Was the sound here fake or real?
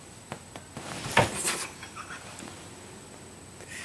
real